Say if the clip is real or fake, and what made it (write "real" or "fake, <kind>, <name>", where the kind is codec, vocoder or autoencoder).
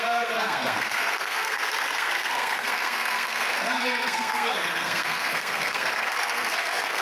fake, codec, SNAC